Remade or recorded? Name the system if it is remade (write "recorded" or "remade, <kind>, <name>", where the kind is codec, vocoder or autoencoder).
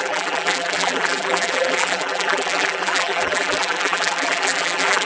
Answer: remade, vocoder, BigVGAN v2